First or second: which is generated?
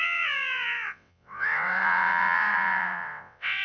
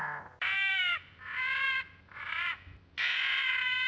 first